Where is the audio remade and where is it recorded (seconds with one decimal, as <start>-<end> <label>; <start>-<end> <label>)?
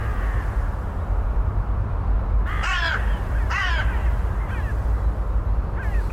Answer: 0.0-3.7 remade; 3.7-6.1 recorded